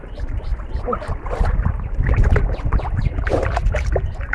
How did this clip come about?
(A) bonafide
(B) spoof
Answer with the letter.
A